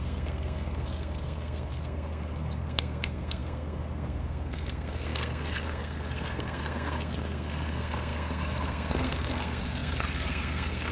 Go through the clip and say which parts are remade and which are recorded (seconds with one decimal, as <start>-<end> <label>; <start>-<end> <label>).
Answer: 0.0-10.9 remade